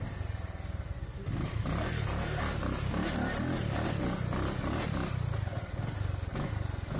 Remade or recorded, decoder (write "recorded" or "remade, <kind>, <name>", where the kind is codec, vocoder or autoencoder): recorded